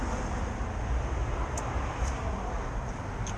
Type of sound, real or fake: real